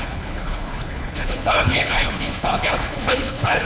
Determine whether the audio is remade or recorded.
remade